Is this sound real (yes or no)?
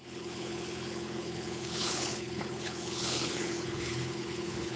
no